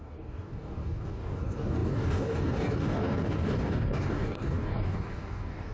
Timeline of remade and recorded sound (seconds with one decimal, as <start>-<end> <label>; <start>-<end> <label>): 0.0-5.7 remade